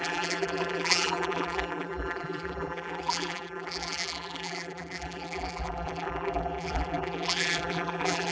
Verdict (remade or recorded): remade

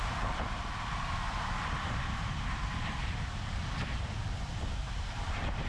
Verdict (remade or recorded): remade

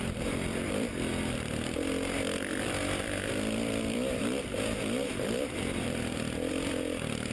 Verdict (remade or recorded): remade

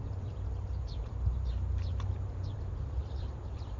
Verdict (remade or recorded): remade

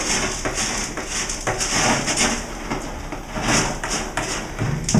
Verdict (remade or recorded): recorded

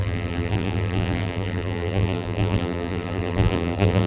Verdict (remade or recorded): remade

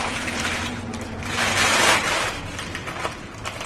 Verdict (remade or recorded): remade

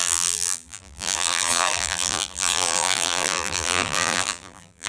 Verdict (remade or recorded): remade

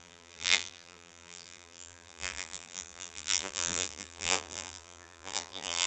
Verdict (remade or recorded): remade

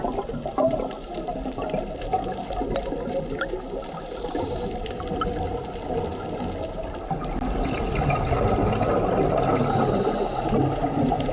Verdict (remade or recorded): recorded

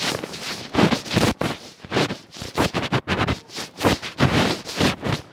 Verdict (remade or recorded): remade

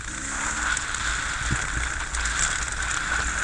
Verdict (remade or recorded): recorded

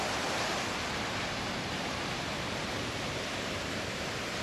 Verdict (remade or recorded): remade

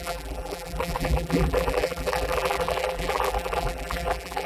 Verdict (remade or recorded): remade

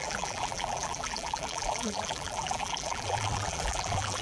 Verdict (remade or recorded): remade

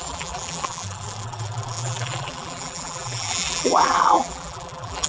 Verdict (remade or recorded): remade